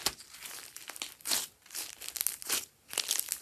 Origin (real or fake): real